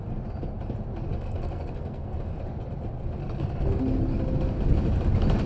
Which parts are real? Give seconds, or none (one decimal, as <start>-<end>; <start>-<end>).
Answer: 0.0-1.1; 2.2-3.2; 3.8-5.5

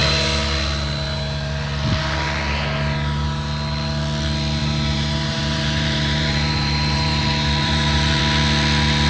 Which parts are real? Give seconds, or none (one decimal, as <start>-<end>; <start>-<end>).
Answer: 0.0-4.6; 8.2-9.1

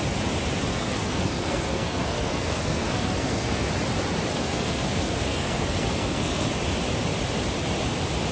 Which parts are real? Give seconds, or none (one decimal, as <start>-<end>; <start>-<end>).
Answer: 0.0-0.7; 3.7-4.3; 6.5-8.3

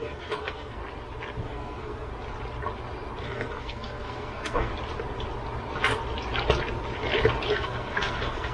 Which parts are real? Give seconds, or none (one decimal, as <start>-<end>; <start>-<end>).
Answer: 0.8-1.4; 2.1-3.2; 4.7-7.5